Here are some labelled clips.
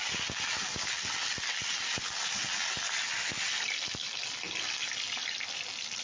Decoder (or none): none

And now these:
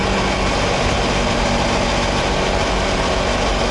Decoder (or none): none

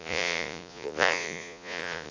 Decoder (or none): vocoder, Vocos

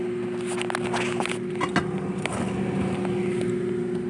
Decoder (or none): none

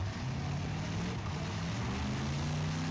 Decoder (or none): none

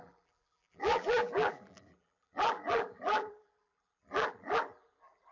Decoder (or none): vocoder, BigVGAN v2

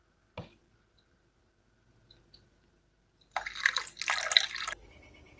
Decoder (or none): none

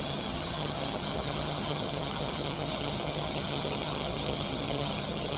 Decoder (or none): vocoder, HiFi-GAN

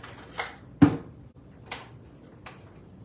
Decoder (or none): none